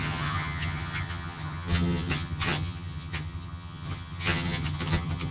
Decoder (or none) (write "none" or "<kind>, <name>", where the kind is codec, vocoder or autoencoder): vocoder, HiFi-GAN